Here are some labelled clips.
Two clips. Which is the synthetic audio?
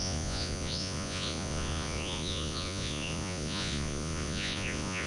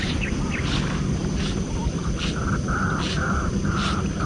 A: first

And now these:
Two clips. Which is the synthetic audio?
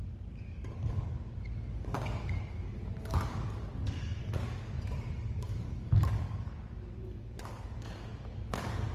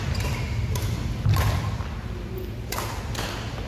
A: first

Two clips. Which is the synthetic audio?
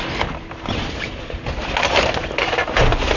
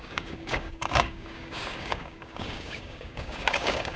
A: second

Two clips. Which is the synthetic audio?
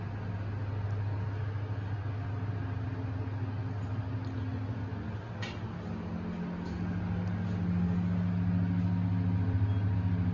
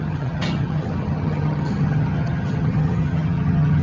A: second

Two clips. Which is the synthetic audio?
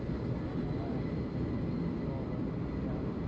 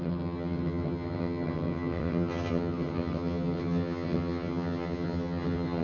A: second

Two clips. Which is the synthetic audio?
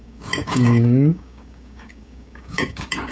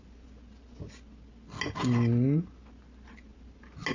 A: first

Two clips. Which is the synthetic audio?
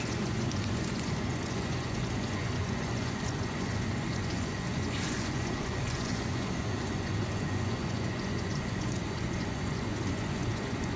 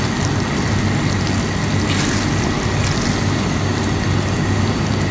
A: first